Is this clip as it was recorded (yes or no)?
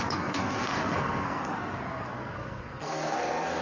no